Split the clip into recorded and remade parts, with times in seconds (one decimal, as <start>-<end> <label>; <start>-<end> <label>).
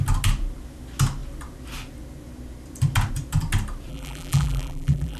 0.0-3.9 recorded; 3.9-5.2 remade